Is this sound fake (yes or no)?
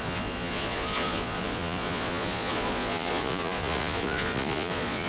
yes